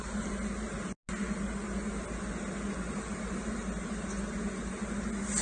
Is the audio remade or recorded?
recorded